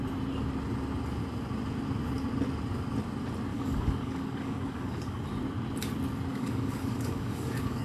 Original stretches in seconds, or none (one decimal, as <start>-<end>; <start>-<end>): 0.0-3.5; 5.2-6.3